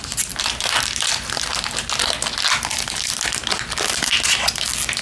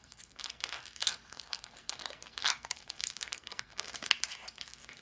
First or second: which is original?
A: first